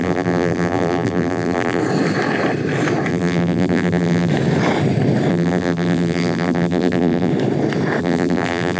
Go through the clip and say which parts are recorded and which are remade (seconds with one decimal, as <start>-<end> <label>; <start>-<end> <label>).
0.0-1.8 remade; 1.8-3.1 recorded; 3.1-4.3 remade; 4.3-5.3 recorded; 5.3-7.3 remade; 7.3-8.0 recorded; 8.0-8.8 remade